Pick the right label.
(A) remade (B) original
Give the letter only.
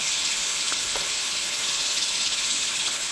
A